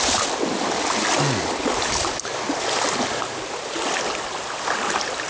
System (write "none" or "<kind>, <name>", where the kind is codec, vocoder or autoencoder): none